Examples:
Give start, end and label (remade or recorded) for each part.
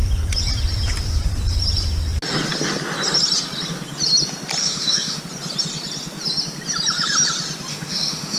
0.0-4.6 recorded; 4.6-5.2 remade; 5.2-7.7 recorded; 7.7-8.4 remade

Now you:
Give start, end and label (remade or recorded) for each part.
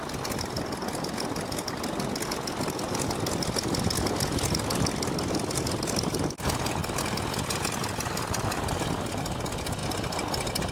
0.0-10.7 recorded